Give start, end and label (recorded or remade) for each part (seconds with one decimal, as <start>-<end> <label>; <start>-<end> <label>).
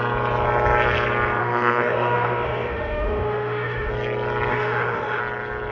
0.0-1.4 recorded; 1.4-3.9 remade; 3.9-4.5 recorded; 4.5-5.2 remade; 5.2-5.7 recorded